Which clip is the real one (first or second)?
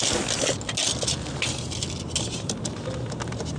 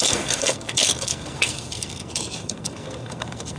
first